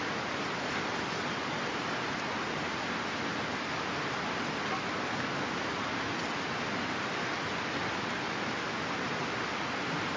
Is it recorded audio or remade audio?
recorded